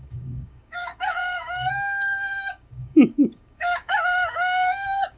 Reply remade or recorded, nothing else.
remade